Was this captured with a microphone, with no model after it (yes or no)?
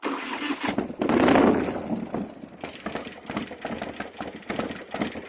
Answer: yes